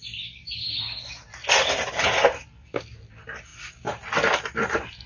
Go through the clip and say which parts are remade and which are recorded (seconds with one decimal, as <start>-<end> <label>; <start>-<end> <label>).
0.0-5.1 recorded